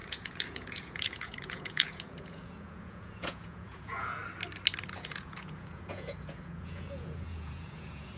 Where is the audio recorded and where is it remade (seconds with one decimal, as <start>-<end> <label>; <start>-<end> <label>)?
0.0-4.2 remade; 4.2-4.9 recorded; 4.9-8.2 remade